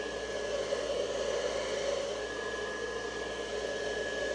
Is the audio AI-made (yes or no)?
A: no